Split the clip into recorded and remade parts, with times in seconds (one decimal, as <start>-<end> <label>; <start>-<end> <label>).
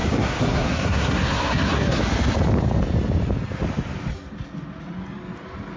0.0-2.0 remade; 2.0-5.8 recorded